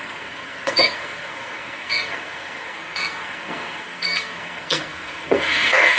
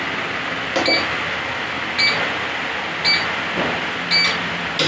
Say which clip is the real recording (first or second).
second